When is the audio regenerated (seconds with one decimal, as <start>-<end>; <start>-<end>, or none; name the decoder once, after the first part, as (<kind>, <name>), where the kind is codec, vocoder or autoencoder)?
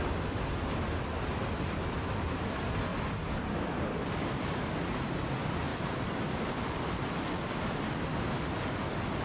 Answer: 5.7-8.5 (vocoder, BigVGAN v2)